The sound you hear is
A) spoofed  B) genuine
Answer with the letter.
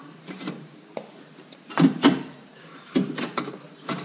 A